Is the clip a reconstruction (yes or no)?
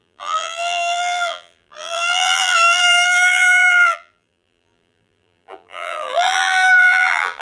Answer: yes